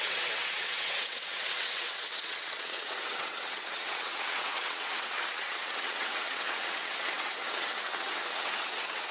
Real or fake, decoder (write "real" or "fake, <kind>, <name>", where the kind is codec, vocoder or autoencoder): fake, vocoder, WaveNeXt